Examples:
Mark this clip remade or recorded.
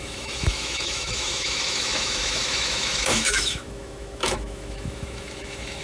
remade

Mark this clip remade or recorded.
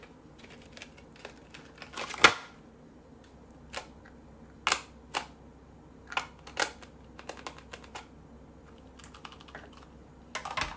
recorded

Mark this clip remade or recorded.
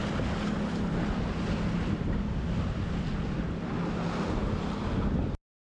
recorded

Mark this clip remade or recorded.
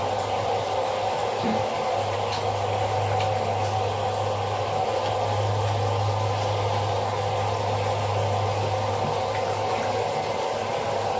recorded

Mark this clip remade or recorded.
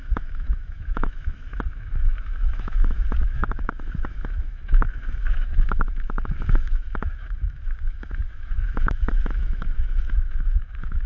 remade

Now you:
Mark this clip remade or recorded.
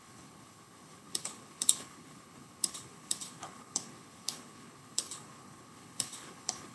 remade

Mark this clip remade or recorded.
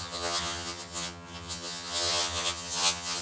remade